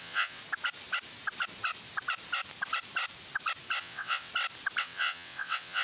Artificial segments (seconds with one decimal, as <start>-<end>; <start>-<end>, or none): 0.0-0.4; 3.8-4.3; 4.8-5.8